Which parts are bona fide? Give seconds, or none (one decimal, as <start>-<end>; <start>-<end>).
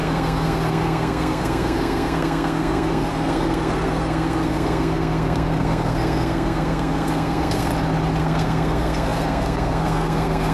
7.7-8.2